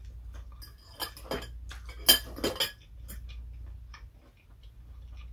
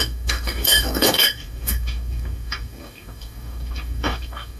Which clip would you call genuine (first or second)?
first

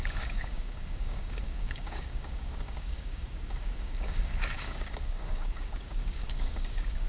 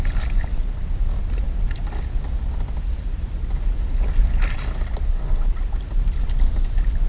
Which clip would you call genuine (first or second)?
second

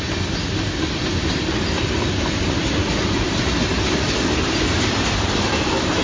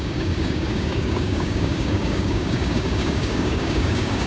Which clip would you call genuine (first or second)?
first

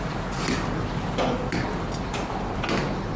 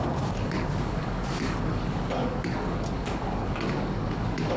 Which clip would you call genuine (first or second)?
first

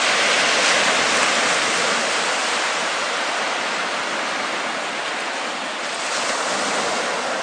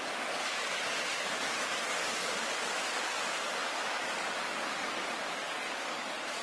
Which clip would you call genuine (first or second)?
first